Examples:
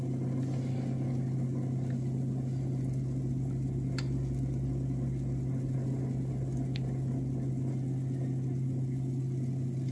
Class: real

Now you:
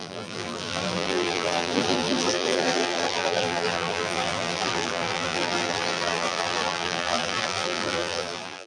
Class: fake